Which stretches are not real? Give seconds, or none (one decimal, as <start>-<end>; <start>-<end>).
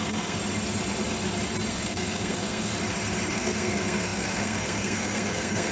0.0-0.4; 1.7-2.7; 3.3-5.7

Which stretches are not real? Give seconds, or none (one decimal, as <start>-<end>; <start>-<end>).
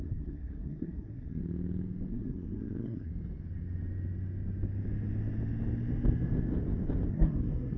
0.0-1.4; 2.1-3.1; 7.1-7.8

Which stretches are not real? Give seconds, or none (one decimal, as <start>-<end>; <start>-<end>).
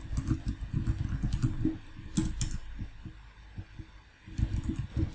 none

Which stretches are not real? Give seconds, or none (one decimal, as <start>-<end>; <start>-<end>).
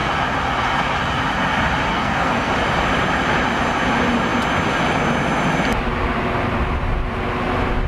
1.9-2.5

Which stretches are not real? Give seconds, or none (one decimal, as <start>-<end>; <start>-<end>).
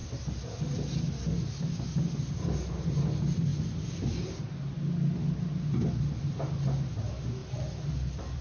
3.5-4.4; 7.4-8.4